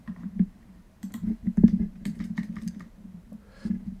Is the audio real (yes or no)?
no